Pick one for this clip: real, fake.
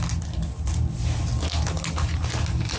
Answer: real